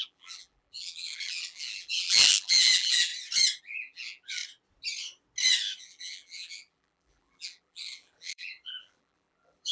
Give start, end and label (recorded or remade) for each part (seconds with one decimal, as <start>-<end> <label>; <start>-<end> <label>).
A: 0.0-3.1 remade; 3.1-3.6 recorded; 3.6-4.4 remade; 4.4-5.8 recorded; 5.8-9.7 remade